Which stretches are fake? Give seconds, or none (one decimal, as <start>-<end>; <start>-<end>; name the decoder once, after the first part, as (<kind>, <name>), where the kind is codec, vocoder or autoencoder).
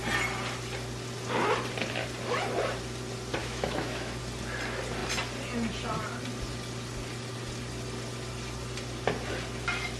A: 3.4-4.2 (autoencoder, DAC-VAE)